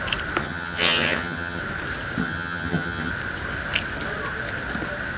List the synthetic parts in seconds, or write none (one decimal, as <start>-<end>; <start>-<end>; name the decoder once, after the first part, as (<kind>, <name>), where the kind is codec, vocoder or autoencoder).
0.4-1.6 (vocoder, HiFi-GAN); 2.2-3.1